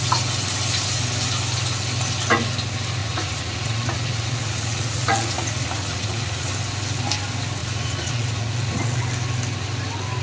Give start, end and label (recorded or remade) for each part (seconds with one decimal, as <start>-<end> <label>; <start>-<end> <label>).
0.0-3.0 recorded; 3.0-6.5 remade; 6.5-7.6 recorded; 7.6-9.0 remade; 9.0-10.2 recorded